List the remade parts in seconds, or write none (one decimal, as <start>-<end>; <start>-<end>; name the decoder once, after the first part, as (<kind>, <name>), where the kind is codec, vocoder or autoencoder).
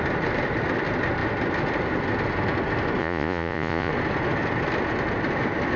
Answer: 3.0-3.9 (vocoder, Vocos)